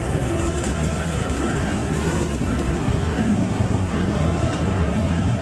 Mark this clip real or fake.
fake